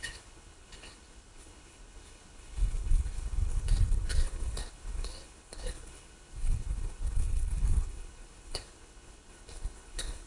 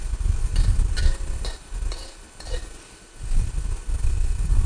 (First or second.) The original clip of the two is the second